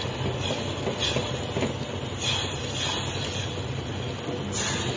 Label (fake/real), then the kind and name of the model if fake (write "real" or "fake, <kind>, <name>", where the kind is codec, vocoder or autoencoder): real